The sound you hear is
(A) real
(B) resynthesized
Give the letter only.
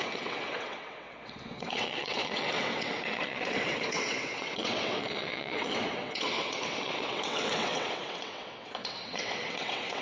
B